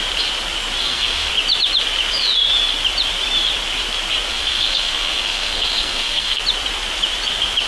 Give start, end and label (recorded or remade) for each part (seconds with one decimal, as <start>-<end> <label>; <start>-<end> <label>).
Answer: 0.0-0.8 recorded; 0.8-1.3 remade; 1.3-4.3 recorded; 4.3-6.4 remade; 6.4-7.7 recorded